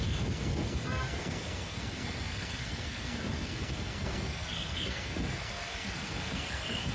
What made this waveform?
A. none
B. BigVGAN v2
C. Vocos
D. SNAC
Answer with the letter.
D